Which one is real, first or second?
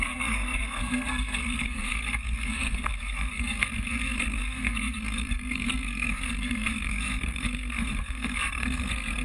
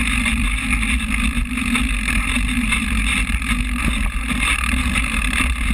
second